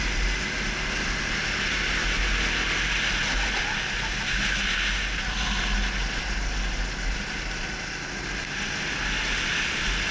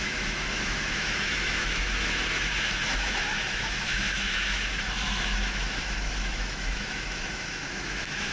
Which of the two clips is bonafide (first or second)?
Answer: first